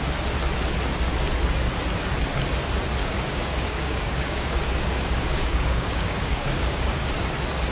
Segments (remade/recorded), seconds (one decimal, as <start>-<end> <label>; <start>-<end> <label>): 0.0-3.0 recorded; 3.0-7.1 remade; 7.1-7.7 recorded